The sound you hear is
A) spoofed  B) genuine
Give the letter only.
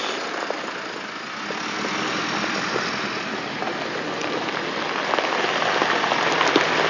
B